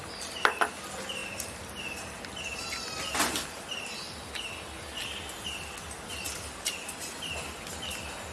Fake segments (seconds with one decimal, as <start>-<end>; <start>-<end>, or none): none